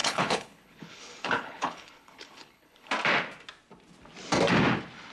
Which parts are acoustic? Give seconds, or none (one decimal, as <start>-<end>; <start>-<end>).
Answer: 2.9-5.1